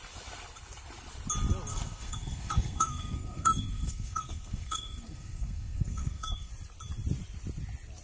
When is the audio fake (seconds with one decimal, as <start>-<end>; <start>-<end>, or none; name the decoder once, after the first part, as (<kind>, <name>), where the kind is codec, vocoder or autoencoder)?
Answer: 1.7-6.5 (codec, SNAC)